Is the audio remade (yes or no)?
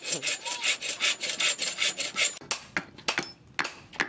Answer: no